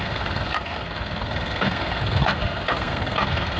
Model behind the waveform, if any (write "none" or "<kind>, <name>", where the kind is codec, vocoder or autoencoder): codec, SNAC